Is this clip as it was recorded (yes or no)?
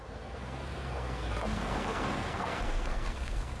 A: no